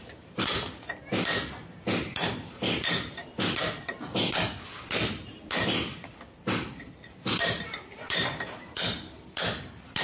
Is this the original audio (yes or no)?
yes